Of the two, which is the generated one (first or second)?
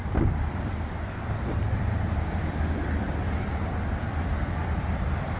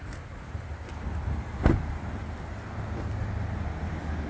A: first